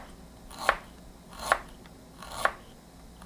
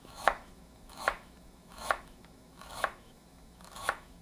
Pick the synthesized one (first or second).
second